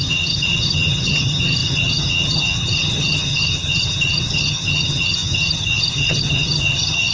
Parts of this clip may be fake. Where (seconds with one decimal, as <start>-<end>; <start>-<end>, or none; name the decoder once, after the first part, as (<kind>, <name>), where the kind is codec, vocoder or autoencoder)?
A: 0.0-7.1 (vocoder, HiFi-GAN)